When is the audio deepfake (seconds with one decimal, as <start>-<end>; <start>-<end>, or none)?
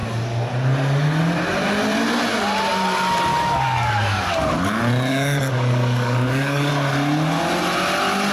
3.3-4.3; 5.1-6.7